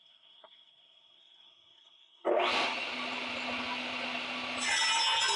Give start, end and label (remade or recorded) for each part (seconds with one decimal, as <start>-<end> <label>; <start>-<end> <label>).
0.0-2.3 remade; 2.3-5.4 recorded